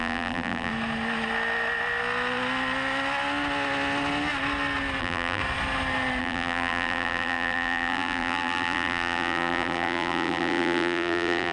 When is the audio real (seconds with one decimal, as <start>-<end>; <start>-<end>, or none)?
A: 0.7-5.0; 5.4-6.2